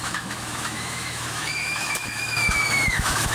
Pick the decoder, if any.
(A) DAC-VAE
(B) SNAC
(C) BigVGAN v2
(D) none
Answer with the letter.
A